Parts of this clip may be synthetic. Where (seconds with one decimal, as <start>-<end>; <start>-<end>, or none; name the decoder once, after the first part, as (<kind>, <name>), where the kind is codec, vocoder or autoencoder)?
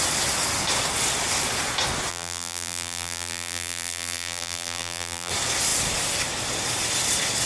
2.1-5.3 (vocoder, BigVGAN v2)